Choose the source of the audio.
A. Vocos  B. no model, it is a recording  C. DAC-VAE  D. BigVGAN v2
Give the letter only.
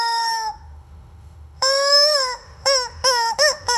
C